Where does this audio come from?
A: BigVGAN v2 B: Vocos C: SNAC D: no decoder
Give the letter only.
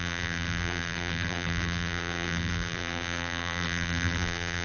A